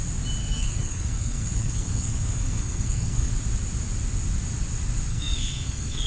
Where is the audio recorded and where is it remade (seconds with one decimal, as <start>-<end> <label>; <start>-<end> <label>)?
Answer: 0.0-0.4 recorded; 0.4-3.3 remade; 3.3-5.1 recorded; 5.1-6.1 remade

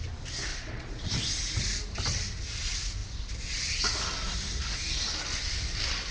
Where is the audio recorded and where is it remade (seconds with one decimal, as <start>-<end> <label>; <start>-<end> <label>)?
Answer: 0.0-0.5 recorded; 0.5-1.1 remade; 1.1-6.1 recorded

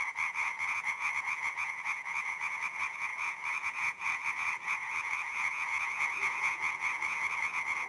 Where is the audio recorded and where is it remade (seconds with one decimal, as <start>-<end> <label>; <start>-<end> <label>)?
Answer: 0.0-7.9 remade

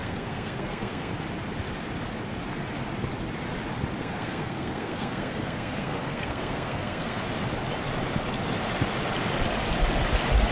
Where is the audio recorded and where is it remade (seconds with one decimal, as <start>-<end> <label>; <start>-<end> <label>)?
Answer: 0.0-1.1 remade; 1.1-4.0 recorded; 4.0-7.2 remade; 7.2-10.5 recorded

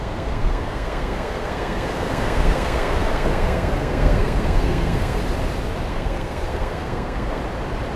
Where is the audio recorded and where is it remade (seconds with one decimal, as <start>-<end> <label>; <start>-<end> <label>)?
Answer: 0.0-5.2 remade; 5.2-5.9 recorded; 5.9-7.4 remade; 7.4-8.0 recorded

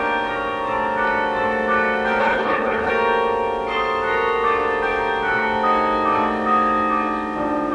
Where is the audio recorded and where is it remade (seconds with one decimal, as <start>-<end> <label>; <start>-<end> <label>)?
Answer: 0.0-2.2 recorded; 2.2-2.9 remade; 2.9-7.7 recorded

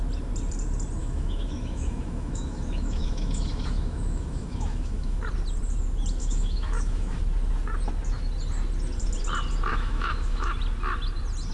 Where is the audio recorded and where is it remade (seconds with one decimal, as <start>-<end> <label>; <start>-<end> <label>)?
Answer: 0.0-1.0 recorded; 1.0-5.2 remade; 5.2-6.2 recorded; 6.2-7.2 remade; 7.2-9.7 recorded; 9.7-10.5 remade; 10.5-11.5 recorded